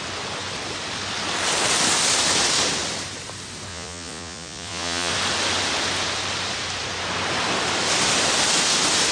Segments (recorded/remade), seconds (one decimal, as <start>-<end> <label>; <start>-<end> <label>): 0.0-3.7 recorded; 3.7-5.1 remade; 5.1-9.1 recorded